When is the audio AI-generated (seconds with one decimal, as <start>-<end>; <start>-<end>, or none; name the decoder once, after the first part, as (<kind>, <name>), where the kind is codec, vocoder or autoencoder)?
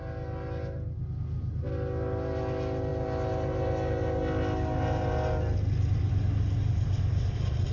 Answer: none